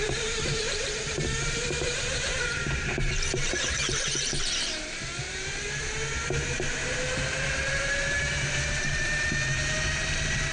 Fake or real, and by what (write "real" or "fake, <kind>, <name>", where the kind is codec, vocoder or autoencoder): fake, vocoder, BigVGAN v2